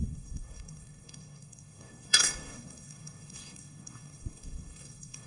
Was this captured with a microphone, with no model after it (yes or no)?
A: no